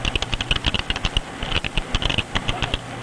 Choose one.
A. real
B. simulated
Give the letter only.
A